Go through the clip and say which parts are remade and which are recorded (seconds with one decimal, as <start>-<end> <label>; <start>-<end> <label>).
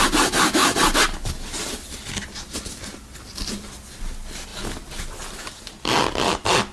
0.0-6.7 recorded